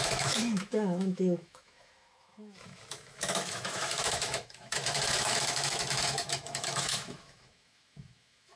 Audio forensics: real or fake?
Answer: fake